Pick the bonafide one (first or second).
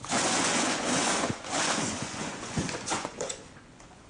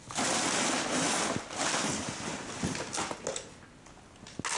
second